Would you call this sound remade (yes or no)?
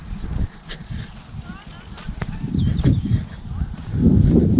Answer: no